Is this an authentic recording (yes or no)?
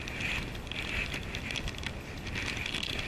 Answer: yes